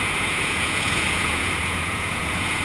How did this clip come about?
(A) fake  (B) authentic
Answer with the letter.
A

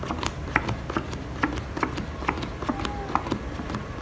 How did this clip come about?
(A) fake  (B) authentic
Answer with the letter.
B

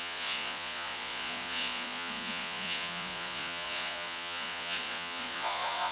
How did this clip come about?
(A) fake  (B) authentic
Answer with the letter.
A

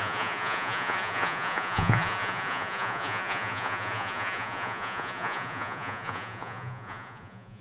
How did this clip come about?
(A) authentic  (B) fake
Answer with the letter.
B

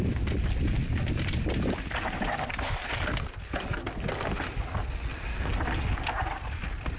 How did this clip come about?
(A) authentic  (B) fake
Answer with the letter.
A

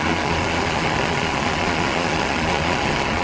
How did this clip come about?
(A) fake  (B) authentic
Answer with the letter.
A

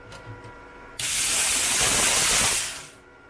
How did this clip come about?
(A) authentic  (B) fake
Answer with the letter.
A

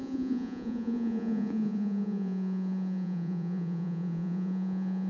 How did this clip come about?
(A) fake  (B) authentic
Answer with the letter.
A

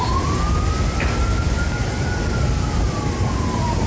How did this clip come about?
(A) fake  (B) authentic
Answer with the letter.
B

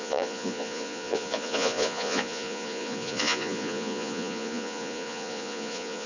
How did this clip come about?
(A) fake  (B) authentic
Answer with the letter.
A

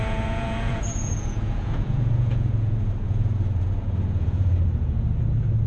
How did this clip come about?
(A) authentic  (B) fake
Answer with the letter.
B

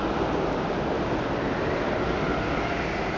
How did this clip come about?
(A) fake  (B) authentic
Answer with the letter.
B